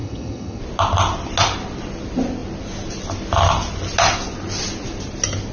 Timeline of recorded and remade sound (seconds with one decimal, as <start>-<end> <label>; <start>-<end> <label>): 0.0-0.6 remade; 0.6-5.5 recorded